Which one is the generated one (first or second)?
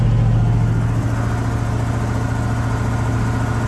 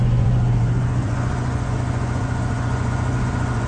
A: second